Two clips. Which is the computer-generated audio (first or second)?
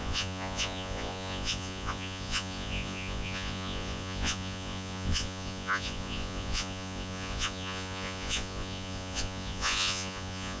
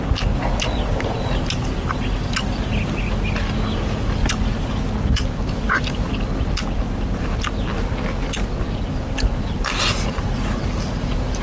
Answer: first